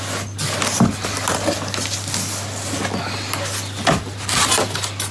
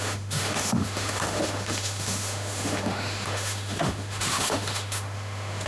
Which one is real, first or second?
first